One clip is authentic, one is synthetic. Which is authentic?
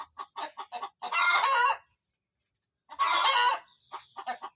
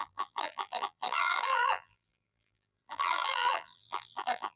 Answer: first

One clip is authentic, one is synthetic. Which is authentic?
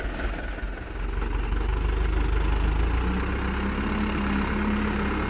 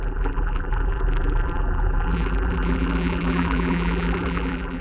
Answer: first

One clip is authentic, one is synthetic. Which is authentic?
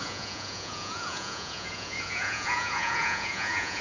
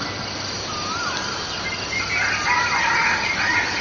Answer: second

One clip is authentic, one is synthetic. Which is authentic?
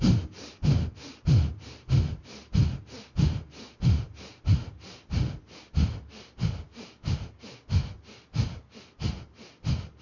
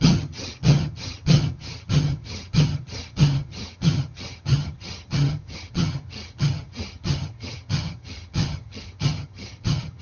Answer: first